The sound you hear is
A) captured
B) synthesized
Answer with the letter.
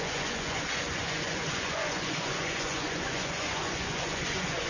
B